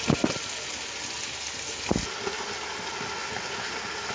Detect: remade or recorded recorded